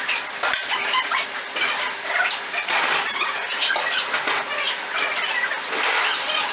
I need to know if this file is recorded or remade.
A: recorded